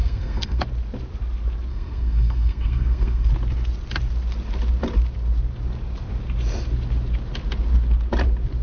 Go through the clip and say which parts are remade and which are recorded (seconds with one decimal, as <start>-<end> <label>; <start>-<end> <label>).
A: 0.0-0.6 remade; 0.6-1.7 recorded; 1.7-3.3 remade; 3.3-8.6 recorded